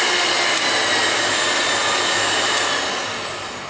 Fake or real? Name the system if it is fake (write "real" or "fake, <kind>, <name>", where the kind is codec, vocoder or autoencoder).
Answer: real